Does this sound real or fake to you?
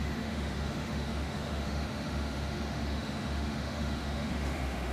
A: fake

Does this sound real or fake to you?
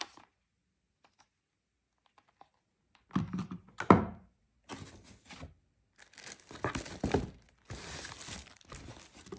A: real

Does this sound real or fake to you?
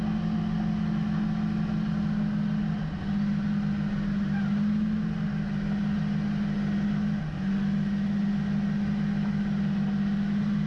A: real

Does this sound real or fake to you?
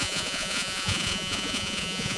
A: fake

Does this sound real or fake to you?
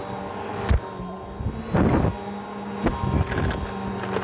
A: real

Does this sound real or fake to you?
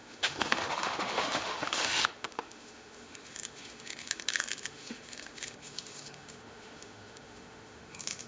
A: fake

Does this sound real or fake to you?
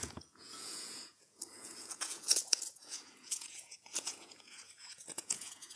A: fake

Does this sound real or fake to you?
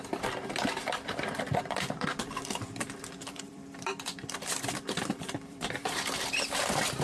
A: fake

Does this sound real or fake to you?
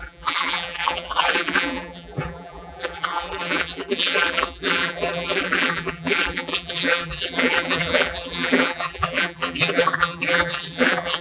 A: fake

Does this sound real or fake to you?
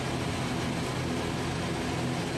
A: real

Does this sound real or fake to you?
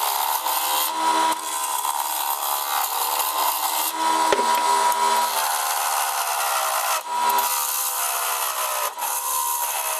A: real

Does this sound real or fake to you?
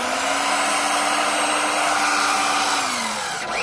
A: real